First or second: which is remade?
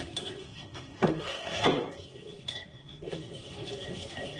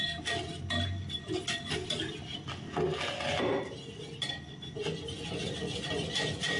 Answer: first